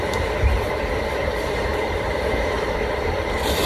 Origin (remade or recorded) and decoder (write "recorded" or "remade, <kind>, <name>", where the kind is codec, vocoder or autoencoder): remade, vocoder, BigVGAN v2